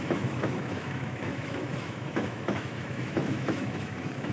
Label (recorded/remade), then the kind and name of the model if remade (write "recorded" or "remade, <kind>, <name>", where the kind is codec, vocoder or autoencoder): remade, autoencoder, DAC-VAE